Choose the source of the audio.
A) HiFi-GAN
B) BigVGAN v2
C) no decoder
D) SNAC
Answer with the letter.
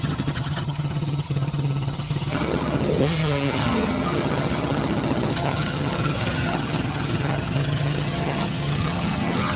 A